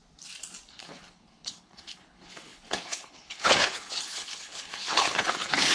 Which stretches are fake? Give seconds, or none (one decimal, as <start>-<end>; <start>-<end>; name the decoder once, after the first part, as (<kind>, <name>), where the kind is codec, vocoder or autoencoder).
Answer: 0.7-5.7 (codec, HILCodec)